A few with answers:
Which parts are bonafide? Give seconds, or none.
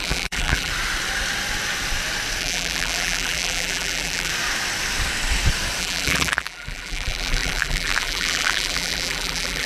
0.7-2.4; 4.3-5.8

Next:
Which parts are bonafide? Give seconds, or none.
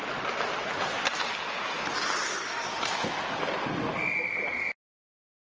0.0-5.5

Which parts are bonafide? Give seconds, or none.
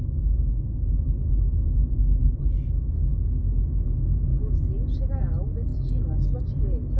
0.0-5.7; 6.4-7.0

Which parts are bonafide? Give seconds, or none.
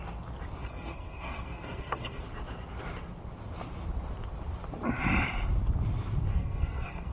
0.0-0.6; 2.2-6.3